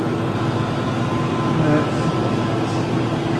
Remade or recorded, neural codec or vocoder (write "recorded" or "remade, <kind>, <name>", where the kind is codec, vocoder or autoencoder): recorded